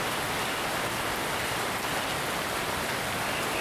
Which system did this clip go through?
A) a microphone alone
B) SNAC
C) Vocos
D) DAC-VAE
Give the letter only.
A